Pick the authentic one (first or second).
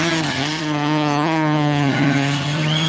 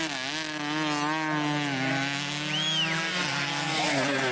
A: second